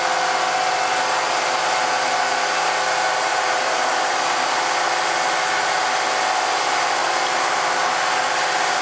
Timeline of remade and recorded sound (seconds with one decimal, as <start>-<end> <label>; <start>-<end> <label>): 0.0-3.3 recorded; 3.3-4.5 remade; 4.5-7.0 recorded; 7.0-7.9 remade; 7.9-8.8 recorded